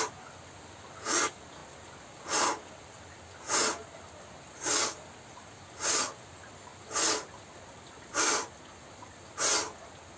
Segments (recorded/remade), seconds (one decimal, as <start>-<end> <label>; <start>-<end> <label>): 0.0-10.2 recorded